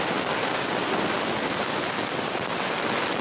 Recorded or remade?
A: recorded